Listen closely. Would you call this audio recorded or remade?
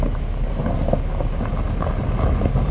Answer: recorded